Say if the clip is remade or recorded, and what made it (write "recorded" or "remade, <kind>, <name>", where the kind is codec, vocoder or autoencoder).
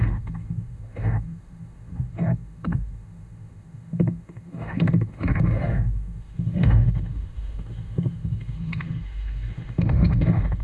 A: remade, autoencoder, DAC-VAE